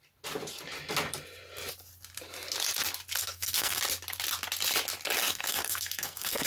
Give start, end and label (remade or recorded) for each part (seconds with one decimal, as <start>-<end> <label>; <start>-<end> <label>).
0.0-3.2 recorded; 3.2-3.8 remade; 3.8-5.2 recorded; 5.2-6.5 remade